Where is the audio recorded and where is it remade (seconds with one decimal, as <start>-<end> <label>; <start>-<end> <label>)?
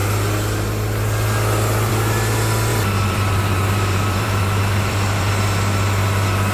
0.0-2.7 recorded; 2.7-5.3 remade; 5.3-6.5 recorded